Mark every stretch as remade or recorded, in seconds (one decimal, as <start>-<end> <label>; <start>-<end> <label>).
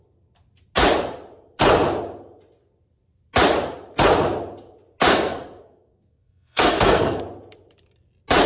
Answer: 0.0-5.1 recorded; 5.1-7.2 remade; 7.2-8.5 recorded